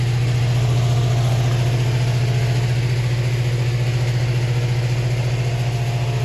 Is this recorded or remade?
recorded